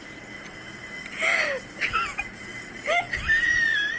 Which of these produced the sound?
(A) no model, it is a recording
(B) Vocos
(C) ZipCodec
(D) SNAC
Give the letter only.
A